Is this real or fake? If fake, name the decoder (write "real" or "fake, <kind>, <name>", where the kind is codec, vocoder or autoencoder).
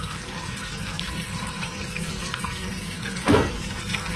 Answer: fake, codec, SNAC